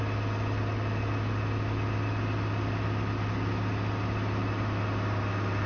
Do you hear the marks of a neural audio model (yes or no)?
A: no